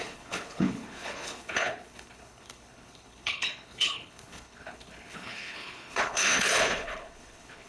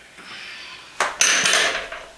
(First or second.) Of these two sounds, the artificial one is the first